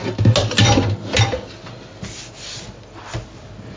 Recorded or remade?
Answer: recorded